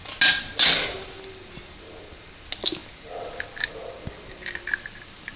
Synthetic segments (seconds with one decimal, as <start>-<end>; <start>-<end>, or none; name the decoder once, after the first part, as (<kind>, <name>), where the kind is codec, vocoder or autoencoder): none